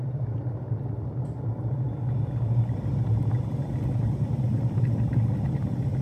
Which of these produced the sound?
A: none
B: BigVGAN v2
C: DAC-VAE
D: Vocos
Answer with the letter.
B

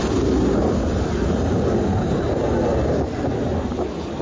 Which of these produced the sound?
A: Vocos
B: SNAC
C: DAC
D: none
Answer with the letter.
D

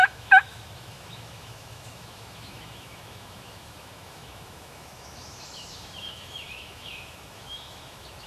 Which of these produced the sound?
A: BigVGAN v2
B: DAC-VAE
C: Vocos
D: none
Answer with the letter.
B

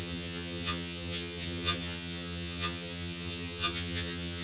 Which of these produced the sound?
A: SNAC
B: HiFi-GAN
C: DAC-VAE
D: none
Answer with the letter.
B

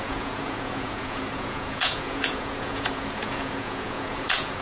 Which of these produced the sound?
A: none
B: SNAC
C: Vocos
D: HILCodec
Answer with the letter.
C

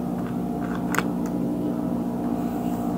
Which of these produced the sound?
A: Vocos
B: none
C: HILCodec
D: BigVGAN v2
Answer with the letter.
B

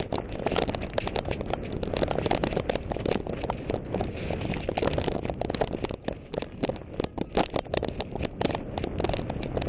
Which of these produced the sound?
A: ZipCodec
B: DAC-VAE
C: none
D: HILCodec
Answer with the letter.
C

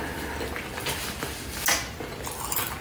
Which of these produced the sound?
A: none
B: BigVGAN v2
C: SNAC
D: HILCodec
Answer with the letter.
A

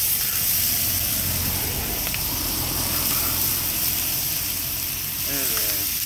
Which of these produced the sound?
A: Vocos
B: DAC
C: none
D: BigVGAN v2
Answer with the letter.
D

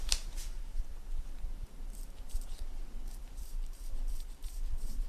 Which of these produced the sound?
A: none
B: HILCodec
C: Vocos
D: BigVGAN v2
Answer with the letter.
D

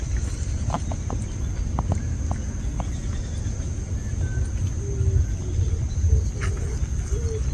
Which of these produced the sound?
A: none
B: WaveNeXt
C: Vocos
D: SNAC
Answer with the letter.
A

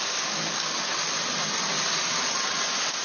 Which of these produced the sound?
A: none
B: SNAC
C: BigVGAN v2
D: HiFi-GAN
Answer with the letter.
A